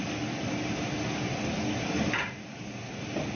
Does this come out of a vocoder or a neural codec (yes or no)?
no